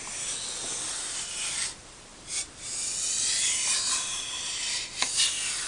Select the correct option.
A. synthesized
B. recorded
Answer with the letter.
B